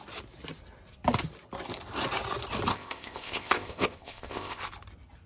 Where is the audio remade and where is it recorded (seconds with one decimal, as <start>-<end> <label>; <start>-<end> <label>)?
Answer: 0.0-2.7 recorded; 2.7-4.6 remade; 4.6-5.3 recorded